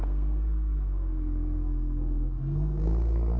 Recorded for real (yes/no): no